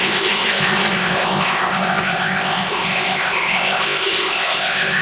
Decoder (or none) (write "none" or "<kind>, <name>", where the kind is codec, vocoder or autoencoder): codec, ZipCodec